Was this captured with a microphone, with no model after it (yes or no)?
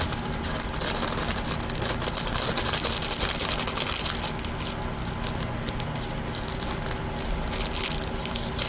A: yes